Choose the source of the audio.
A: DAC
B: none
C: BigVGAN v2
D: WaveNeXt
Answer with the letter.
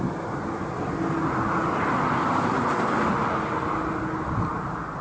B